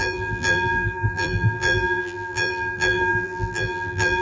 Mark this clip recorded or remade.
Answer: remade